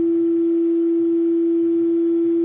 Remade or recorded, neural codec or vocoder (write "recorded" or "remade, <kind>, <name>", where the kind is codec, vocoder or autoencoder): remade, autoencoder, DAC-VAE